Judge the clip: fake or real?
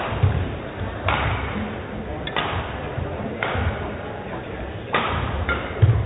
real